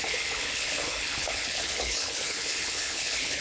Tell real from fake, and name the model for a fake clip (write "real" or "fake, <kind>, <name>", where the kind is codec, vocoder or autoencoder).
fake, codec, HILCodec